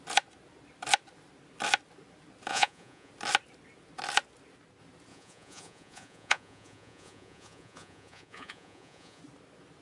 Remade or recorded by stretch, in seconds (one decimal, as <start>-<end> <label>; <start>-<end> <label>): 0.0-2.5 recorded; 2.5-3.1 remade; 3.1-5.1 recorded; 5.1-9.2 remade; 9.2-9.8 recorded